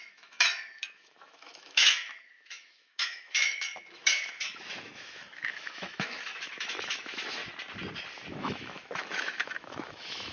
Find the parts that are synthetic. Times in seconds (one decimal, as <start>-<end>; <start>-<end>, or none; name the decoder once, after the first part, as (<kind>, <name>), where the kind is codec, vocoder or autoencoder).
0.0-7.4 (autoencoder, DAC-VAE); 8.3-10.3